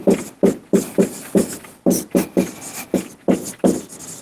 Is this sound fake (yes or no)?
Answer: no